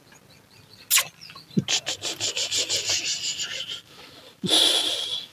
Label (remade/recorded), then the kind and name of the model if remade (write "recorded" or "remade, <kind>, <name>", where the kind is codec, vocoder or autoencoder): recorded